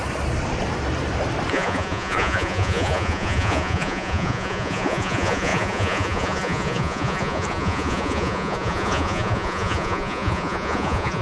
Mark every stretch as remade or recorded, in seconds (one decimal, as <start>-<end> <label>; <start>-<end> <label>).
0.0-1.5 recorded; 1.5-11.2 remade